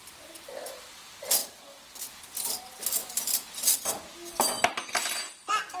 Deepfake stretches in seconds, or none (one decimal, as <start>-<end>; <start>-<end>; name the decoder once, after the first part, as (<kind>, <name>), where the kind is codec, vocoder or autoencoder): 3.0-3.8 (vocoder, BigVGAN v2)